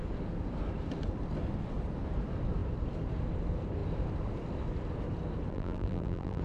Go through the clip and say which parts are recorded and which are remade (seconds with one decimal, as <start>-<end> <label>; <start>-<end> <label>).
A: 0.0-5.5 recorded; 5.5-6.4 remade

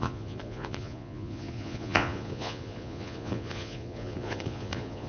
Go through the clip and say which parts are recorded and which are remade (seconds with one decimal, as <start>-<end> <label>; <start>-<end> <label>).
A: 0.0-5.1 remade

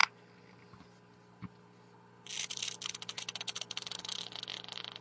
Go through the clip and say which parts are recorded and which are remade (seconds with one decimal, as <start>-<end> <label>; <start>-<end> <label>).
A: 0.0-5.0 recorded

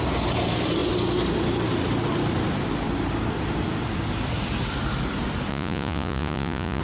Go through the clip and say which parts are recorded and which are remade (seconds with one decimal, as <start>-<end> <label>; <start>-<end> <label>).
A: 0.0-5.5 recorded; 5.5-6.8 remade

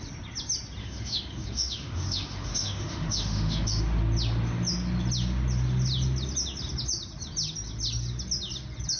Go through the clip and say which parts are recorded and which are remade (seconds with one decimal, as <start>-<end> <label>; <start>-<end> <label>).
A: 0.0-0.8 recorded; 0.8-3.8 remade; 3.8-9.0 recorded

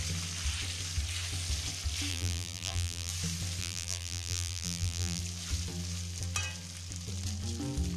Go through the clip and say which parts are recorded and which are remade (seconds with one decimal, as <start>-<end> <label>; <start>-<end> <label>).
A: 0.0-2.1 recorded; 2.1-3.1 remade; 3.1-3.6 recorded; 3.6-5.2 remade; 5.2-8.0 recorded

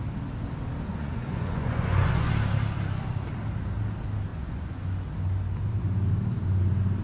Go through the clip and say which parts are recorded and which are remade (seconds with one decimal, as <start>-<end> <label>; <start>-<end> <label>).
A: 0.0-0.9 recorded; 0.9-2.3 remade; 2.3-4.3 recorded; 4.3-4.8 remade; 4.8-7.0 recorded